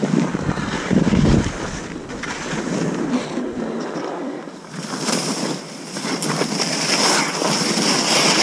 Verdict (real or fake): real